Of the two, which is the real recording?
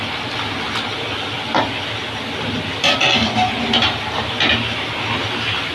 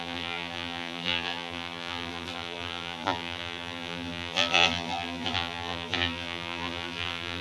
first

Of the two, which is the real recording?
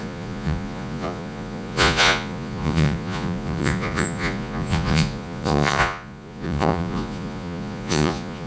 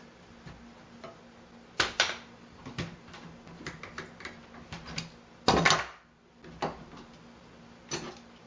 second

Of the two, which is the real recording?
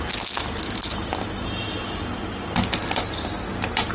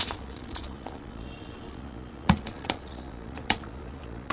first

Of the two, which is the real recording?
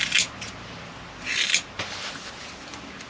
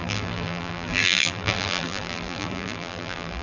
first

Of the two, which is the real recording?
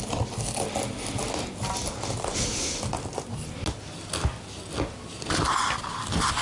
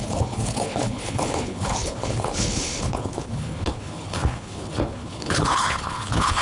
first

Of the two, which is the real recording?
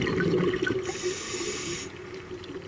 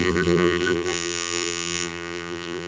first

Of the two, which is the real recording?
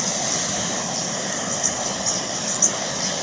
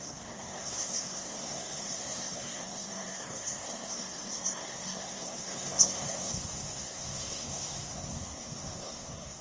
first